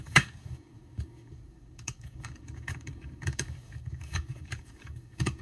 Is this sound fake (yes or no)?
yes